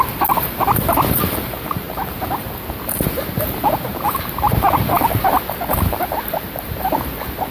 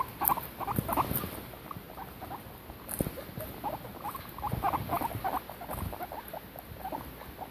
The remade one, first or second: first